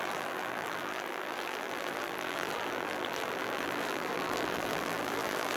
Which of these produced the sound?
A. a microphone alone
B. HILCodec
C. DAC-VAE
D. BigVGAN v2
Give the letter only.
D